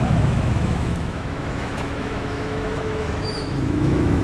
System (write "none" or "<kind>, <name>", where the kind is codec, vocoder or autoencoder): autoencoder, DAC-VAE